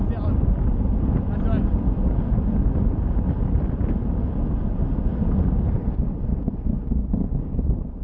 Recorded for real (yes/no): yes